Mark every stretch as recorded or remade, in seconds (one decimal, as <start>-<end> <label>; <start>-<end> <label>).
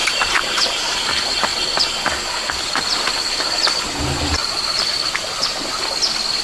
0.0-1.1 remade; 1.1-4.4 recorded; 4.4-5.0 remade; 5.0-6.4 recorded